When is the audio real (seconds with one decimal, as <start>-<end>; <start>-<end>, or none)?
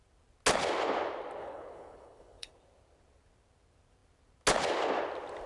0.0-1.4; 2.5-5.5